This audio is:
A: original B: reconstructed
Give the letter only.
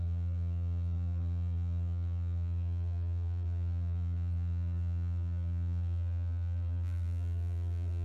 B